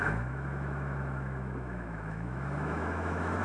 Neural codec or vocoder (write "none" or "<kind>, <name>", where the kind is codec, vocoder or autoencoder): autoencoder, DAC-VAE